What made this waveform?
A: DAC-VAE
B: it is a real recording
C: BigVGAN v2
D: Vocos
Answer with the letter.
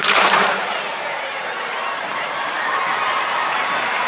C